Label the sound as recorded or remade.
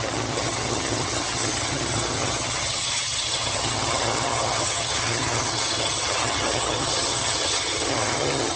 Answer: remade